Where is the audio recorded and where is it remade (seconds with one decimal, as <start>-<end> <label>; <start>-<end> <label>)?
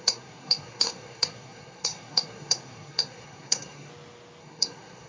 0.0-3.9 remade; 3.9-4.4 recorded; 4.4-5.1 remade